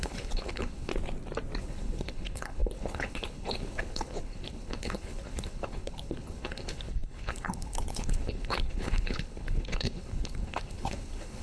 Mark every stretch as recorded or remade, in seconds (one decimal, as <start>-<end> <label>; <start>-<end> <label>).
0.0-0.9 remade; 0.9-1.6 recorded; 1.6-11.4 remade